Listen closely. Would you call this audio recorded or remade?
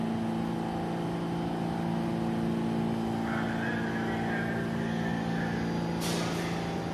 recorded